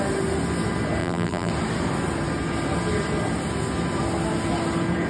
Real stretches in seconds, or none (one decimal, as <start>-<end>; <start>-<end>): 0.0-1.0; 1.5-5.1